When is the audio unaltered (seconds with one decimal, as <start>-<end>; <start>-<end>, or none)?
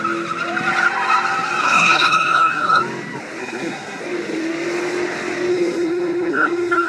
0.0-1.6; 2.8-3.4; 4.0-5.5